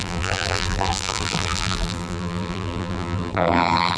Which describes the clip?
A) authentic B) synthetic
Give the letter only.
B